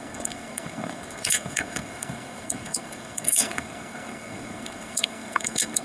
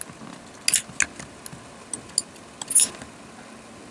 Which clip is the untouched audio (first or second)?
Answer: second